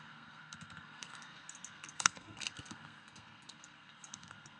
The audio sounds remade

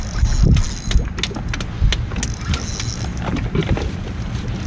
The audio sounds recorded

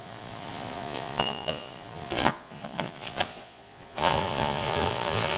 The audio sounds remade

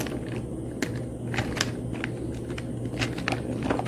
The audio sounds recorded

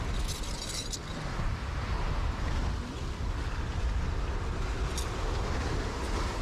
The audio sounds recorded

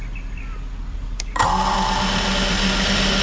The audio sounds recorded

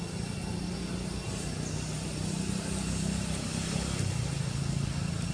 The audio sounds recorded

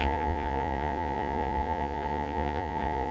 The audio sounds remade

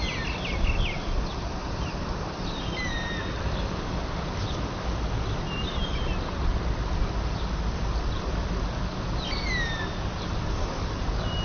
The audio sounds recorded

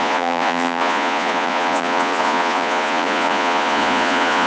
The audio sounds remade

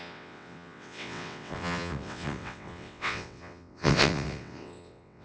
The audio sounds remade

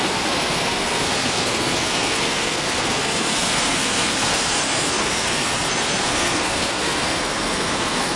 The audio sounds remade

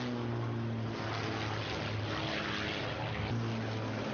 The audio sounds recorded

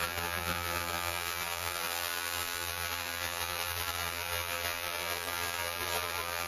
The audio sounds remade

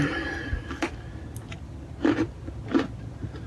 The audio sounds recorded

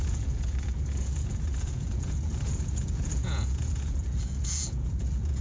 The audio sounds remade